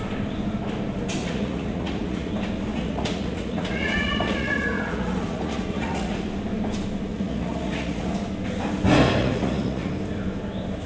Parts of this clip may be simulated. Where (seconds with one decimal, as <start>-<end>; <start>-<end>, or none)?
1.2-2.3; 2.7-6.2; 7.1-8.1; 9.2-9.9